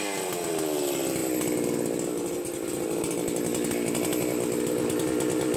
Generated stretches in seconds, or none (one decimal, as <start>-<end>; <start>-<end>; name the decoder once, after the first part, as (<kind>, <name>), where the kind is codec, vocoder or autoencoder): none